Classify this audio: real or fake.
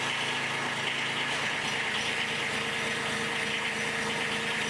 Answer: real